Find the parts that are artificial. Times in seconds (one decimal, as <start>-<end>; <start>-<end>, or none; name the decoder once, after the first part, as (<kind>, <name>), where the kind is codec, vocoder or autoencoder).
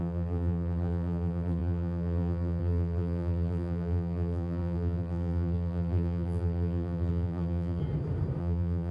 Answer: 0.0-7.8 (vocoder, BigVGAN v2); 8.4-8.9